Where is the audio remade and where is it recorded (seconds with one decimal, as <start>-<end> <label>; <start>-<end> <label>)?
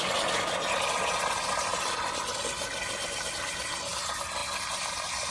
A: 0.0-5.3 recorded